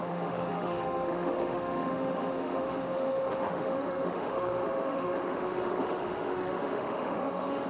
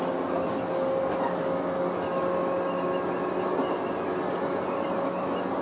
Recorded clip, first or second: second